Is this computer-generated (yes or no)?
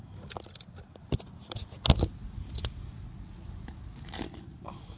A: no